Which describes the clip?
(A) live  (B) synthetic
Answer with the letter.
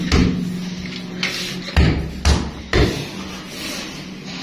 A